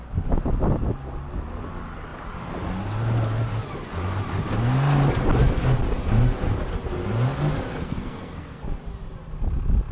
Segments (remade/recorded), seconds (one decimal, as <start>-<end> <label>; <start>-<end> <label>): 0.0-7.7 recorded; 7.7-8.8 remade; 8.8-9.9 recorded